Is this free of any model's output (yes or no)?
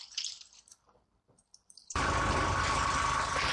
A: no